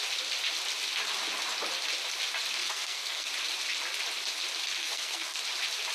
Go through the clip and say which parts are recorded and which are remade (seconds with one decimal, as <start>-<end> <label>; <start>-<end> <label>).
0.0-2.6 recorded; 2.6-3.3 remade; 3.3-4.8 recorded; 4.8-5.4 remade; 5.4-5.9 recorded